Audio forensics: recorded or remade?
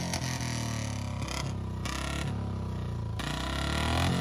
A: recorded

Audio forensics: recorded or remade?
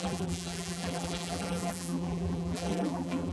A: remade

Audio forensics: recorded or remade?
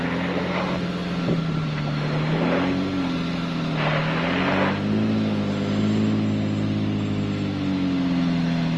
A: recorded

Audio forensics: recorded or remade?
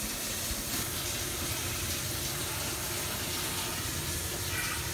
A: recorded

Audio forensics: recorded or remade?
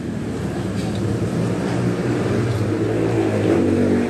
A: remade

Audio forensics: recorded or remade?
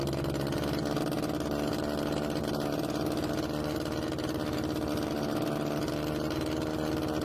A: recorded